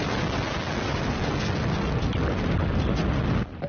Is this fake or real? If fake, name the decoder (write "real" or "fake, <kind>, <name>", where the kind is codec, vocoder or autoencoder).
real